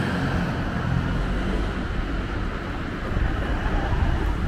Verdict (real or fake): real